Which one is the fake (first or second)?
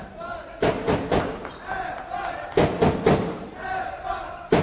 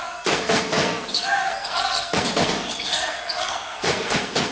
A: second